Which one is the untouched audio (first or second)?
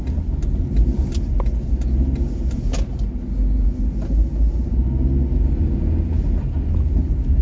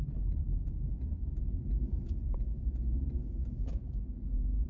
first